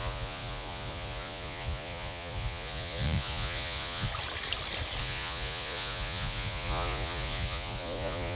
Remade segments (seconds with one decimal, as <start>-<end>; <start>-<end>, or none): 0.0-4.1; 5.0-8.3